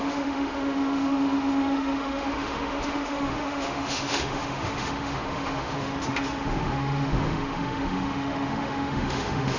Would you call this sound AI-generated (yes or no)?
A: yes